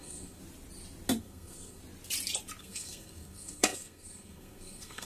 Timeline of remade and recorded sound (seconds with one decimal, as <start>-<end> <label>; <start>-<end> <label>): 0.0-0.4 remade; 0.4-1.2 recorded; 1.2-1.8 remade; 1.8-2.6 recorded; 2.6-5.1 remade